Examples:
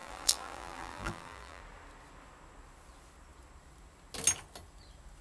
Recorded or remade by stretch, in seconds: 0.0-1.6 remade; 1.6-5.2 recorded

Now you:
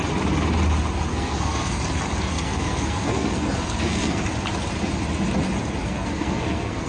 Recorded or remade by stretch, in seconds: 0.0-1.1 recorded; 1.1-1.8 remade; 1.8-2.3 recorded; 2.3-4.2 remade; 4.2-5.8 recorded; 5.8-6.9 remade

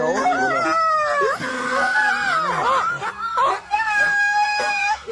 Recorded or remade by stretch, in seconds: 0.0-1.5 recorded; 1.5-2.1 remade; 2.1-3.5 recorded; 3.5-5.1 remade